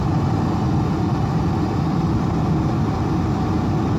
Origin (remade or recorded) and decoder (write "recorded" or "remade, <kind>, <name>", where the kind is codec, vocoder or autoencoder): recorded